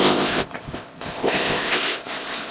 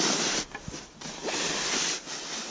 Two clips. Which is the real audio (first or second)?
second